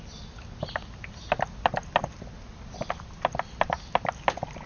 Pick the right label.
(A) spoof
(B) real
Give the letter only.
B